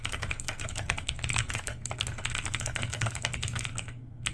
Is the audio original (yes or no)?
no